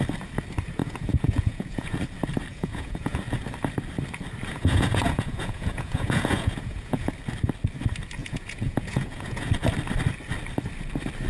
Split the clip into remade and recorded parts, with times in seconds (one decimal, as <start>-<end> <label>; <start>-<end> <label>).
0.0-0.8 recorded; 0.8-2.0 remade; 2.0-2.5 recorded; 2.5-3.2 remade; 3.2-4.5 recorded; 4.5-7.1 remade; 7.1-8.2 recorded; 8.2-9.5 remade; 9.5-11.3 recorded

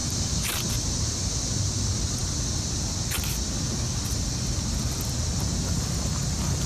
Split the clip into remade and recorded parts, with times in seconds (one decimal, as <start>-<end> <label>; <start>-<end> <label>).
0.0-0.6 remade; 0.6-6.7 recorded

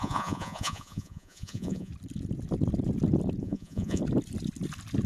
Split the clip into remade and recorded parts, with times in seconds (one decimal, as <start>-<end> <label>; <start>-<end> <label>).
0.0-1.9 remade; 1.9-3.4 recorded; 3.4-4.0 remade; 4.0-5.1 recorded

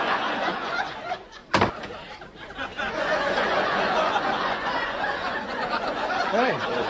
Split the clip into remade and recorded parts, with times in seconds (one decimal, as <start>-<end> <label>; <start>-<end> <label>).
0.0-1.4 remade; 1.4-2.9 recorded; 2.9-6.9 remade

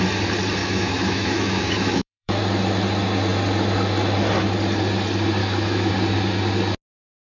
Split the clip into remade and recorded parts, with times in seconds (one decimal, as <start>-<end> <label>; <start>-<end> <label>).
0.0-0.6 recorded; 0.6-2.4 remade; 2.4-5.4 recorded; 5.4-5.9 remade; 5.9-7.2 recorded

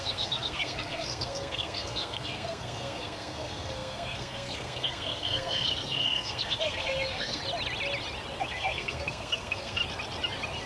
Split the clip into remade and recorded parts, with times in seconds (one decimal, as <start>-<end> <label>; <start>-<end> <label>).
0.0-7.4 remade; 7.4-8.4 recorded; 8.4-9.8 remade; 9.8-10.7 recorded

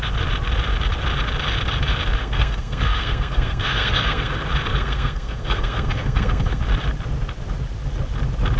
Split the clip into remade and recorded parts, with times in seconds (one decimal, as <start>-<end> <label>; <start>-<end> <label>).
0.0-2.2 recorded; 2.2-4.3 remade; 4.3-4.7 recorded; 4.7-6.6 remade; 6.6-8.6 recorded

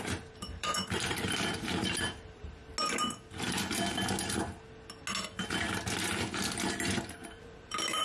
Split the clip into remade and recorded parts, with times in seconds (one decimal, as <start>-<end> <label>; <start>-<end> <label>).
0.0-2.6 remade; 2.6-5.8 recorded; 5.8-8.0 remade